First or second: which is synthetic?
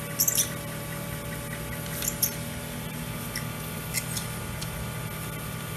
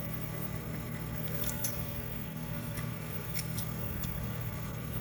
second